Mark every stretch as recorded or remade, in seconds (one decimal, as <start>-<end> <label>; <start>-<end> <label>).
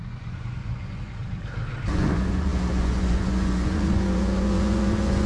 0.0-1.2 remade; 1.2-1.9 recorded; 1.9-5.3 remade